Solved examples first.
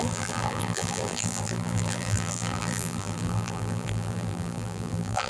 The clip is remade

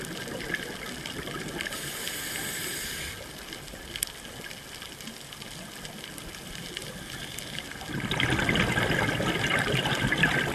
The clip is recorded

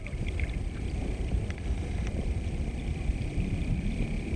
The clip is remade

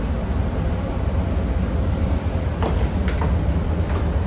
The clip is recorded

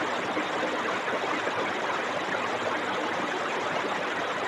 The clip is recorded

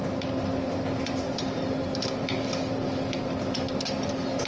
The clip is recorded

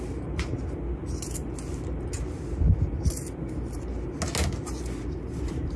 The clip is recorded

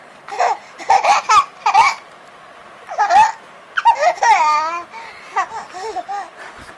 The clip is recorded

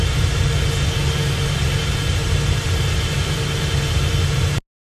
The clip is recorded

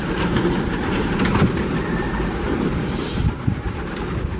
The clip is remade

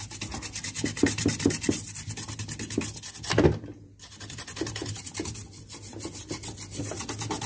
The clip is recorded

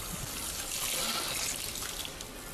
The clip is recorded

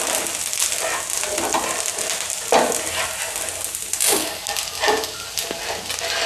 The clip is recorded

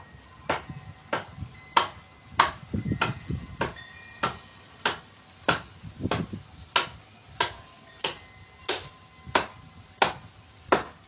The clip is recorded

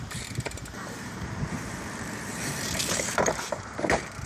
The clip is remade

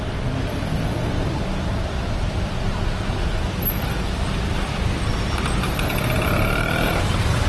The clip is remade